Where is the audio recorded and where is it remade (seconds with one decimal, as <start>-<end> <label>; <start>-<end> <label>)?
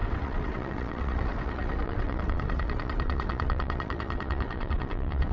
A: 0.0-5.3 remade